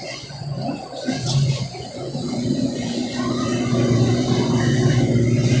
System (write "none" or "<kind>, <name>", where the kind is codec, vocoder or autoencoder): vocoder, Vocos